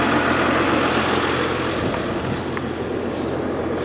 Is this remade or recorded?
recorded